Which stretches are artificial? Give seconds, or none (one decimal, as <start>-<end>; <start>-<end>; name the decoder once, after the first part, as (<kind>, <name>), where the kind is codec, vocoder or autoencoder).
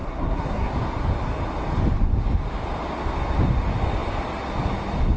0.0-0.7 (codec, SNAC)